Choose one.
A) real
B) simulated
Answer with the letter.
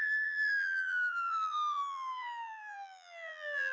B